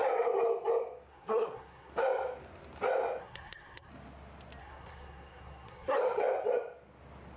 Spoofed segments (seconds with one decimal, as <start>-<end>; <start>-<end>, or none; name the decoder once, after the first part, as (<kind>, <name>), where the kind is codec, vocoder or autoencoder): 1.1-1.9 (codec, SNAC); 3.2-3.9; 4.6-6.0